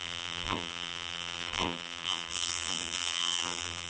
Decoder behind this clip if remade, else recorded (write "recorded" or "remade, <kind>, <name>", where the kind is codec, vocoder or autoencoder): remade, vocoder, BigVGAN v2